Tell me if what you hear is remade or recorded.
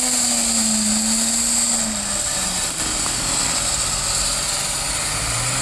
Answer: recorded